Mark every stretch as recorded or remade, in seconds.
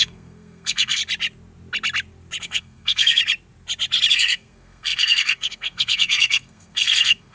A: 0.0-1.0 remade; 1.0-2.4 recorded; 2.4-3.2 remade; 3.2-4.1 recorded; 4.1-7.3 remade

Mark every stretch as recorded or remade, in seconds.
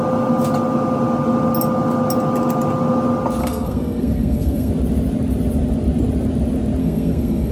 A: 0.0-3.4 recorded; 3.4-4.7 remade; 4.7-6.8 recorded; 6.8-7.5 remade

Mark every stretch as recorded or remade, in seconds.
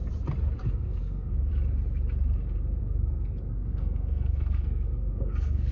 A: 0.0-0.7 recorded; 0.7-1.5 remade; 1.5-2.8 recorded; 2.8-5.7 remade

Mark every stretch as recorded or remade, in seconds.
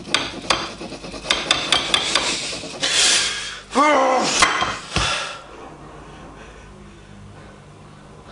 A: 0.0-8.3 recorded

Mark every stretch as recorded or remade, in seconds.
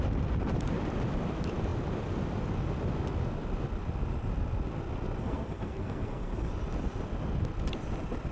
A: 0.0-5.2 recorded; 5.2-6.5 remade; 6.5-8.3 recorded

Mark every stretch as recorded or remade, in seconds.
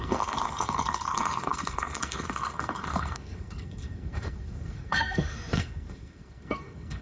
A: 0.0-7.0 remade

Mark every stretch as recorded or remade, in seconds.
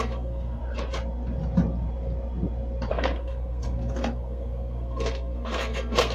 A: 0.0-0.6 remade; 0.6-2.9 recorded; 2.9-6.1 remade